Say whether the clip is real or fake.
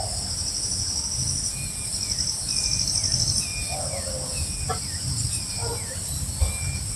real